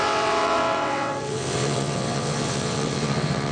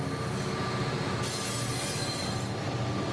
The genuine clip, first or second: second